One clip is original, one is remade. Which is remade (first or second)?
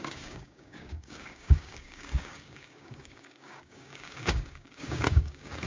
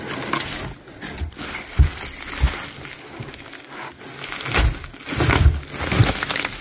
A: first